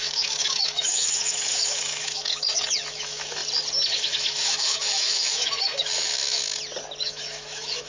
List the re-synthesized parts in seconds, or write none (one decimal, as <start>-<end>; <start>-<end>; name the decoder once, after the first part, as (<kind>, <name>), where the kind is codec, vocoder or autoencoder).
0.0-3.4 (autoencoder, DAC-VAE); 3.9-6.4; 7.0-7.9